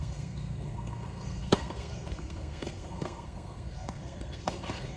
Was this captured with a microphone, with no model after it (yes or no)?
no